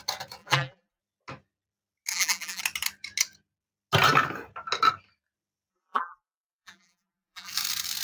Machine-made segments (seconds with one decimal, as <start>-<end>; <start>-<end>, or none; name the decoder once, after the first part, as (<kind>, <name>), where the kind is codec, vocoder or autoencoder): 0.4-1.0 (vocoder, BigVGAN v2); 2.1-2.6; 5.7-7.5